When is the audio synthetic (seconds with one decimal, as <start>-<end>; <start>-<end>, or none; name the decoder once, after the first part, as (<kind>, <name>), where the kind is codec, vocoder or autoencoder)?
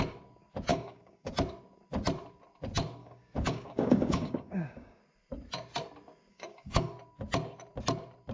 0.7-1.3 (codec, DAC); 3.0-5.0; 6.3-6.9